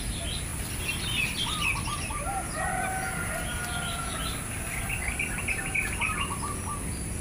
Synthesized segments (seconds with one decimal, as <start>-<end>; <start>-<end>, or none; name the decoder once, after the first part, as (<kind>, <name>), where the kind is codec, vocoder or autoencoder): none